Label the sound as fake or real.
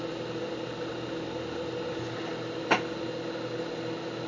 real